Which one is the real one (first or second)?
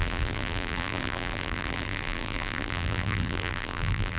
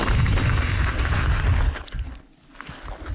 second